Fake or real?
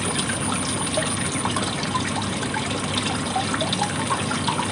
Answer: real